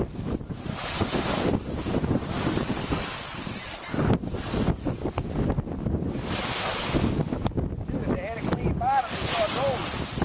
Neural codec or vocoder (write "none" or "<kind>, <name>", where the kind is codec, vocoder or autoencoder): none